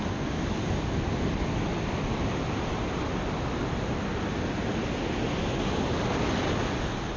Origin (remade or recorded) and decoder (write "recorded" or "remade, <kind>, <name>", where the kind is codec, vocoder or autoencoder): recorded